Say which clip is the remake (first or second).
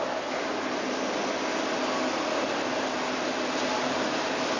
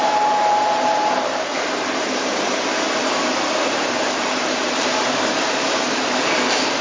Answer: second